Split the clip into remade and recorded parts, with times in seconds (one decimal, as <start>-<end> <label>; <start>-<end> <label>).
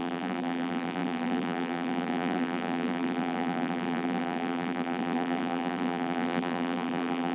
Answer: 0.0-7.3 remade